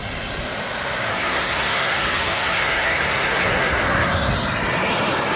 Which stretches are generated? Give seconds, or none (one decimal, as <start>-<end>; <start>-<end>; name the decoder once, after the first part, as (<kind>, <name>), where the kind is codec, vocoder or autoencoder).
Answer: 1.1-4.3 (codec, SNAC)